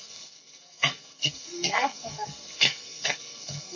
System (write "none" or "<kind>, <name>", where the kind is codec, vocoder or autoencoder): codec, SNAC